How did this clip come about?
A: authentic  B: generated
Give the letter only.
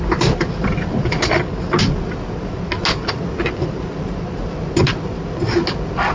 A